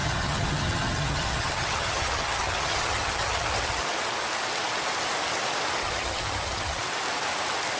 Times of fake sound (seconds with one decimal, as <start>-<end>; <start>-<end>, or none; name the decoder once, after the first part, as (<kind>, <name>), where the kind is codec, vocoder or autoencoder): 0.0-3.8 (vocoder, HiFi-GAN); 5.8-6.8